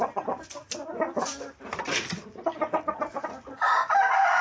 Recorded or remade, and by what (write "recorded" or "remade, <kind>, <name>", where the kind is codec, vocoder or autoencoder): recorded